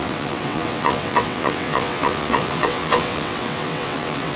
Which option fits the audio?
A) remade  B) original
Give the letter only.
A